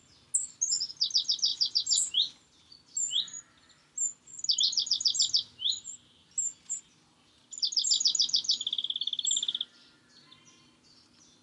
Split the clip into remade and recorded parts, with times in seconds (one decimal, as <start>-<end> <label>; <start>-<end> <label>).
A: 0.0-11.4 recorded